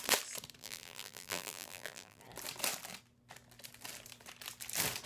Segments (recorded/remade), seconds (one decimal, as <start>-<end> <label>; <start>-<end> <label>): 0.0-0.6 recorded; 0.6-2.2 remade; 2.2-5.1 recorded